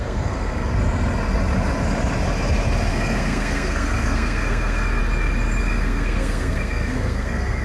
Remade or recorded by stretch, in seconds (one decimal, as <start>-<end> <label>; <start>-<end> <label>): 0.0-0.7 remade; 0.7-2.9 recorded; 2.9-5.0 remade; 5.0-5.6 recorded; 5.6-7.6 remade